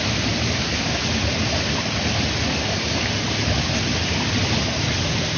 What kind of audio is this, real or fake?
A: real